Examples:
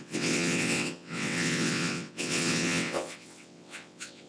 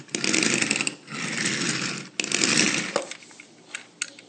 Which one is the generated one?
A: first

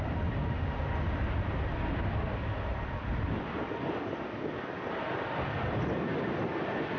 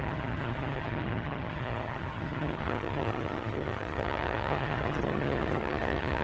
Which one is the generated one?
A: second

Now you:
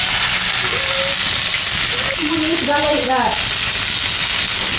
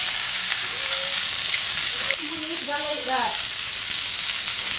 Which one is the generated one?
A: second